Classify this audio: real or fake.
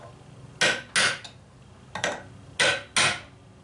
real